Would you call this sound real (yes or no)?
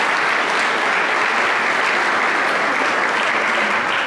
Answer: yes